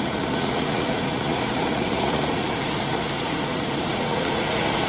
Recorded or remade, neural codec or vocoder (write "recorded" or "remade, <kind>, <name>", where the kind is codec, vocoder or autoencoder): remade, vocoder, Vocos